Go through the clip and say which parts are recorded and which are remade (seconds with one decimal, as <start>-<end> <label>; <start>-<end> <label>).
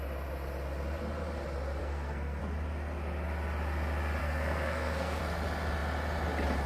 0.0-1.8 recorded; 1.8-2.4 remade; 2.4-4.2 recorded; 4.2-5.2 remade; 5.2-6.7 recorded